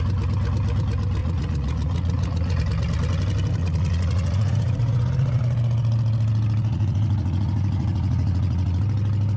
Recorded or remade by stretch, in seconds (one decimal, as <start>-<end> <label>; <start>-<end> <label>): 0.0-1.2 recorded; 1.2-2.6 remade; 2.6-3.6 recorded; 3.6-5.4 remade; 5.4-6.7 recorded; 6.7-8.8 remade; 8.8-9.4 recorded